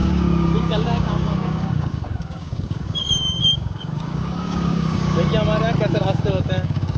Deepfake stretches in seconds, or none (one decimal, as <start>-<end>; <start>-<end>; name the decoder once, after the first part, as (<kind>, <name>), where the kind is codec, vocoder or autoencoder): 0.0-5.3 (codec, DAC); 5.9-7.0